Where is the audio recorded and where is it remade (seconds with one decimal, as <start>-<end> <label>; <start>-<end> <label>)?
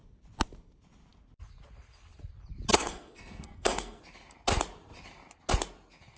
0.0-2.7 recorded; 2.7-4.0 remade; 4.0-6.2 recorded